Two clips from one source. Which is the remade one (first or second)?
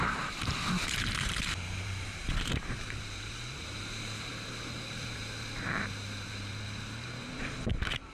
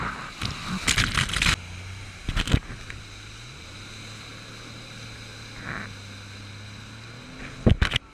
first